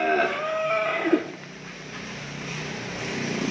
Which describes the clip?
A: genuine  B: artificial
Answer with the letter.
B